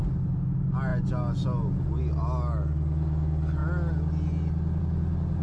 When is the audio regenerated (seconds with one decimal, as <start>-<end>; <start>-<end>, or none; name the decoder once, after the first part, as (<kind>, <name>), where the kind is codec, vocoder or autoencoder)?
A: none